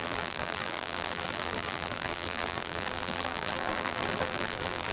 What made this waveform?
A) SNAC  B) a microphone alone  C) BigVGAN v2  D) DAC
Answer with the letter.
C